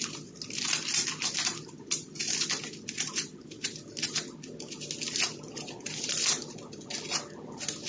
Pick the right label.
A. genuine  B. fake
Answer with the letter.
A